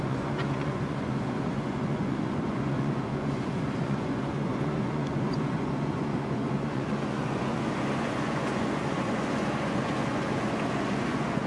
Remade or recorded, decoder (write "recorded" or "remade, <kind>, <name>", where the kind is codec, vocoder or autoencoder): remade, vocoder, Vocos